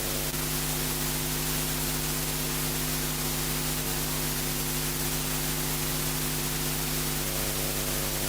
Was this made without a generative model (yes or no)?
yes